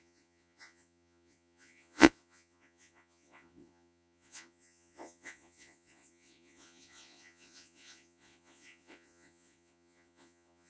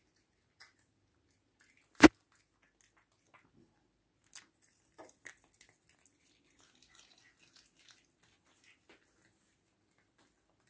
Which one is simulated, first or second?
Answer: first